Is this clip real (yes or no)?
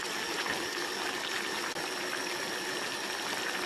yes